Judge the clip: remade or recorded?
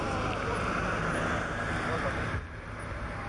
recorded